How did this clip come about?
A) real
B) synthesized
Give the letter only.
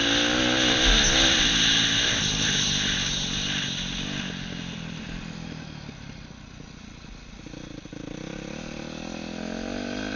A